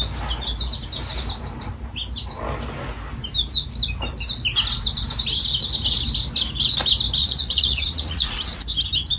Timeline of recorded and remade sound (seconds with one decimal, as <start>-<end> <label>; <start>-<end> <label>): 0.0-7.2 recorded; 7.2-8.6 remade; 8.6-9.2 recorded